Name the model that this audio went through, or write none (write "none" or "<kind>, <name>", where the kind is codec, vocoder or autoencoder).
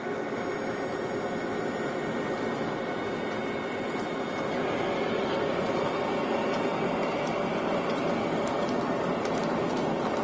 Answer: none